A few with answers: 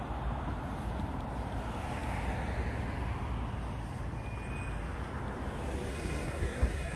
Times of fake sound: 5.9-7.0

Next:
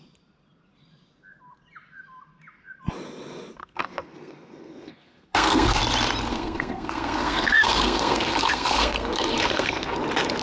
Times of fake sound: 3.6-5.8; 6.3-10.0

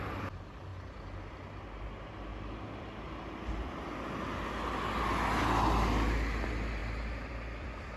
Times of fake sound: none

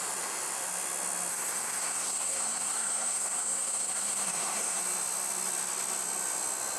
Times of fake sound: 1.3-4.8

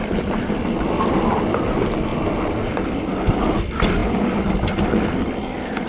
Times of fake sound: 0.0-2.1; 3.3-4.0; 4.5-5.9